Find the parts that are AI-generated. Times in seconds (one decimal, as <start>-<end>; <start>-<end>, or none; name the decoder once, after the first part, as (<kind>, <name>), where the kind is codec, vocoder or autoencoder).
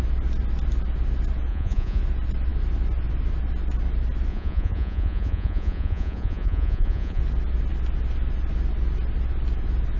1.5-2.0 (vocoder, Vocos); 4.3-7.2